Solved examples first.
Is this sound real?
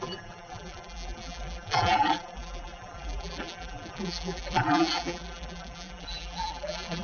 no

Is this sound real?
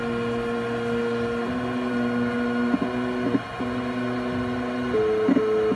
yes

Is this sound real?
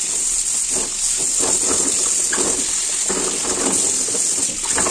yes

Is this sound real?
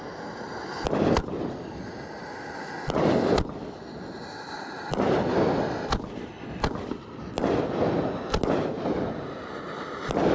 yes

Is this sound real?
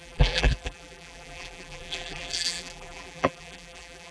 no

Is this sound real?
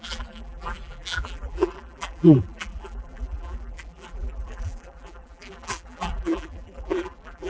no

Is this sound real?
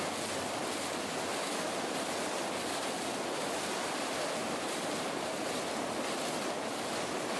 yes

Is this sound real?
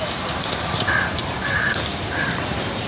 no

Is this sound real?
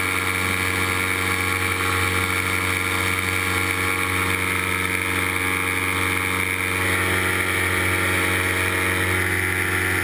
yes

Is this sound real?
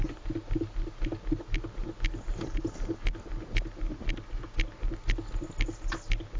yes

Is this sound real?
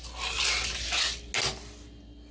yes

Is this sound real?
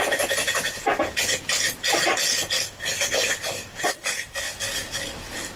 yes